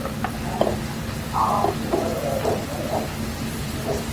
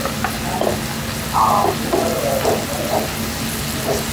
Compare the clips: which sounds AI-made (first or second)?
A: first